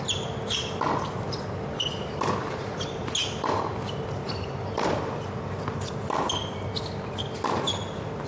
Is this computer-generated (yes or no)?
no